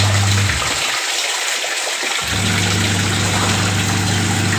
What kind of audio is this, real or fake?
real